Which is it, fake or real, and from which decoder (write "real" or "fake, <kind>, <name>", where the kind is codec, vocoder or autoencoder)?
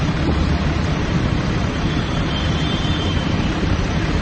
real